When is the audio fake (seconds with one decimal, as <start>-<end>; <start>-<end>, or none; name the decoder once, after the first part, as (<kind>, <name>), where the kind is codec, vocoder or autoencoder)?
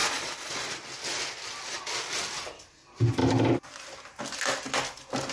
0.0-0.7 (vocoder, Vocos)